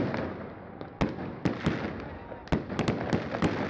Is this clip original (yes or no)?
yes